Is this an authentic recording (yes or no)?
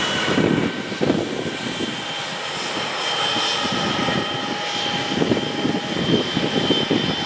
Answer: yes